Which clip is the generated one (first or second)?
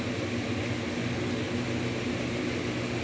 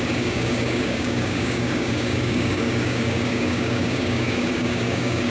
second